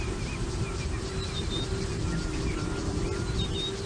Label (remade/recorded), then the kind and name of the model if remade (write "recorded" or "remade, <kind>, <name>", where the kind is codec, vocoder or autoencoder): recorded